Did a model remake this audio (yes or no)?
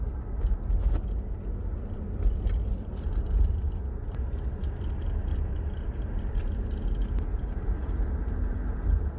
no